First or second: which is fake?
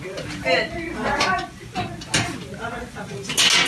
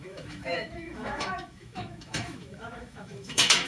second